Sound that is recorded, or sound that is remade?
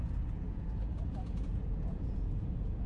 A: remade